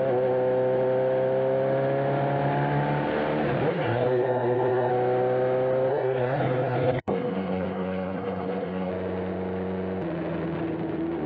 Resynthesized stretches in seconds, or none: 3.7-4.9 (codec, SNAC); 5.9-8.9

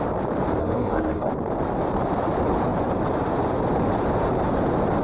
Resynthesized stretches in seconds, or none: 0.6-1.3 (codec, SNAC)

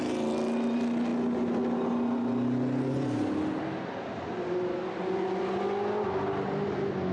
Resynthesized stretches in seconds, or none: none

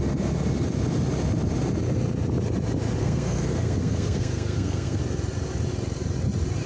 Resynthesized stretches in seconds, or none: 3.0-5.0 (codec, SNAC)

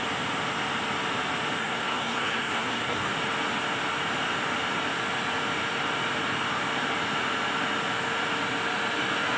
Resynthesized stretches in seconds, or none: 1.6-3.1 (codec, SNAC)

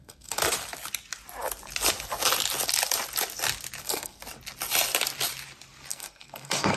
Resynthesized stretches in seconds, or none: 0.0-0.4 (codec, SNAC); 3.8-4.2; 5.9-6.8